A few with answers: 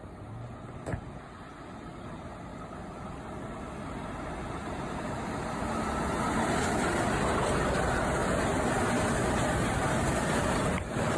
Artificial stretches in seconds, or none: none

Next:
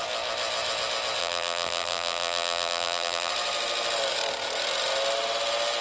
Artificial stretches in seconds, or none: 1.2-3.3 (vocoder, BigVGAN v2)

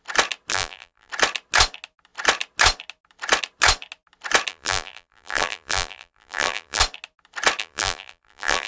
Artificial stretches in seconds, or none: 0.5-1.1 (vocoder, BigVGAN v2); 4.5-6.8; 7.6-8.7

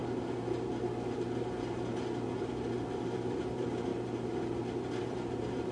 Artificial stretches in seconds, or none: 1.9-3.9 (vocoder, BigVGAN v2); 5.0-5.7

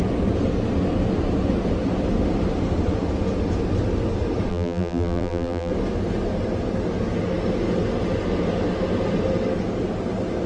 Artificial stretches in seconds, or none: 4.5-5.7 (vocoder, BigVGAN v2)